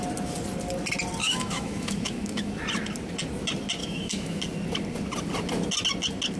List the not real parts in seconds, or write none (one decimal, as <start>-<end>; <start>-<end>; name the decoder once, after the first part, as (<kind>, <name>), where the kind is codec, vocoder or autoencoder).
1.2-2.5 (autoencoder, DAC-VAE); 3.8-4.4